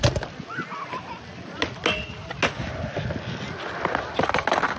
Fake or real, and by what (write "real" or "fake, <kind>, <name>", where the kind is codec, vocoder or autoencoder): real